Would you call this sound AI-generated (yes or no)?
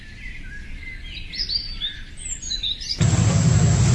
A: no